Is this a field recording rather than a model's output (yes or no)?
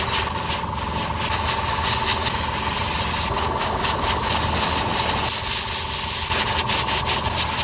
yes